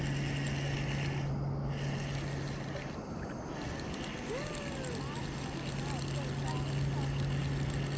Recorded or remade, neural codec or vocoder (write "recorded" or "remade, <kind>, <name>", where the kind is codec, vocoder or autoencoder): recorded